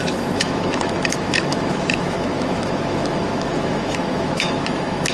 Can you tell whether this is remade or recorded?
remade